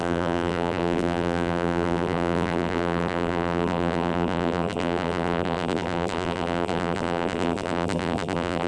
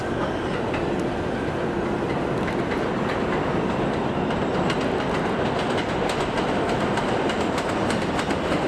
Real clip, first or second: second